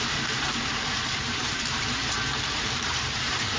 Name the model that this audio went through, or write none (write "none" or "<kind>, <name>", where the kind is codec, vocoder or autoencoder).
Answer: vocoder, BigVGAN v2